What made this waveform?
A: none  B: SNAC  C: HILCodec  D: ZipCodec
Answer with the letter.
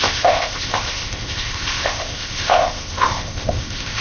D